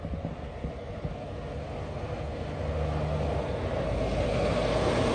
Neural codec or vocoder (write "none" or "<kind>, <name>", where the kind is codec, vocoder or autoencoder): none